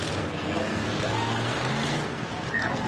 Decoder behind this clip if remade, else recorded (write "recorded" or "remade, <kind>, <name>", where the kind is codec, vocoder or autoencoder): remade, codec, SNAC